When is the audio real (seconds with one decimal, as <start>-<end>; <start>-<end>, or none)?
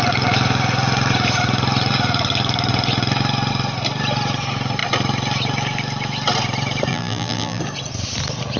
0.0-6.9; 7.6-8.6